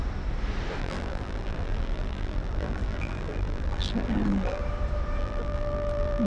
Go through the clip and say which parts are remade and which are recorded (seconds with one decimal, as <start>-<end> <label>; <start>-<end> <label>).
0.0-0.8 recorded; 0.8-4.6 remade; 4.6-5.2 recorded; 5.2-6.3 remade